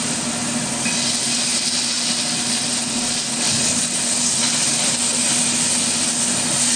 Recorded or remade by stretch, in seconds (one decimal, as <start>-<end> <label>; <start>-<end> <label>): 0.0-6.8 recorded